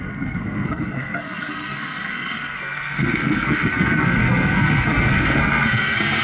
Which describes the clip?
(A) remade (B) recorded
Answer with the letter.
A